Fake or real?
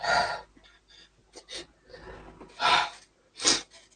real